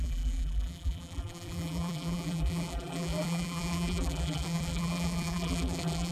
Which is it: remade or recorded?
remade